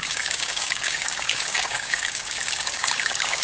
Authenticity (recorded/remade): remade